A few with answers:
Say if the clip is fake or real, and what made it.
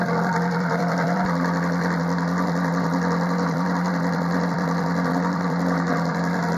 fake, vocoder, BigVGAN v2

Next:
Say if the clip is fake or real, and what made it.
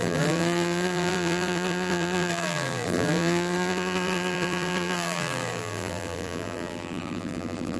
fake, vocoder, BigVGAN v2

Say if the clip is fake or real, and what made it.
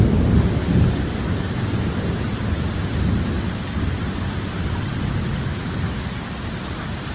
real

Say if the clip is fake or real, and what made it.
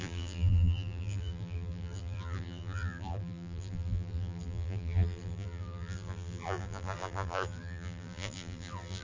fake, vocoder, BigVGAN v2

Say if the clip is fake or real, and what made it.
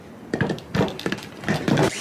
real